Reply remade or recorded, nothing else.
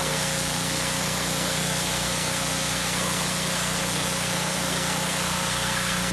remade